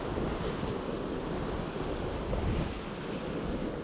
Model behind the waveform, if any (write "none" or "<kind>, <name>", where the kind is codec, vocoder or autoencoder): none